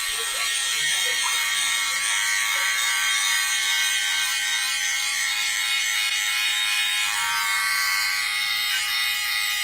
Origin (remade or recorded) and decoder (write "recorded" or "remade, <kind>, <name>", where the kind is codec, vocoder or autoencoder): remade, vocoder, BigVGAN v2